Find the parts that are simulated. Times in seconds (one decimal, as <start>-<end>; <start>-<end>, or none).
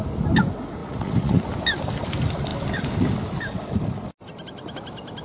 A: 0.8-1.4